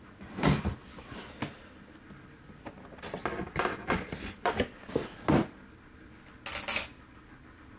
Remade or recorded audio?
recorded